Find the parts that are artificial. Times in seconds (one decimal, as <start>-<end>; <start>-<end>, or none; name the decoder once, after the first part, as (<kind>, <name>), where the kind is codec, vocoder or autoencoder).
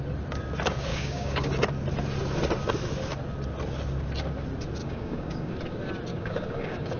0.9-1.5 (codec, DAC); 4.8-5.5; 6.1-7.0